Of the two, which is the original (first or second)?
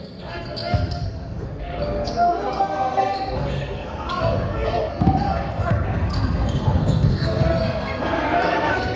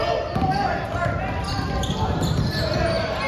second